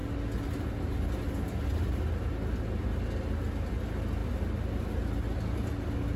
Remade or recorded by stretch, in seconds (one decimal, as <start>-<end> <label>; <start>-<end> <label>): 0.0-6.2 recorded